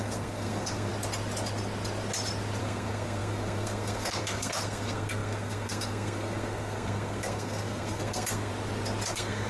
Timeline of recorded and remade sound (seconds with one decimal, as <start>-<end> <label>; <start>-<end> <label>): 0.0-0.9 remade; 0.9-2.6 recorded; 2.6-8.5 remade; 8.5-9.1 recorded; 9.1-9.5 remade